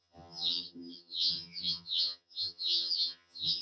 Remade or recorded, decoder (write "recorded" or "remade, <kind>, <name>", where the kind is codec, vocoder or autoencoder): remade, vocoder, HiFi-GAN